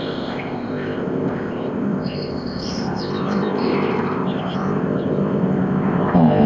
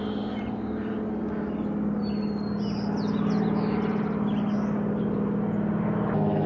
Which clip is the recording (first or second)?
second